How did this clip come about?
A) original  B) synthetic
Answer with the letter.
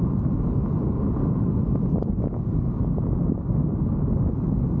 A